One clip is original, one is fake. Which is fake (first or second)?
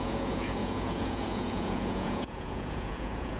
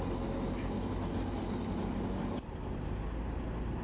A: first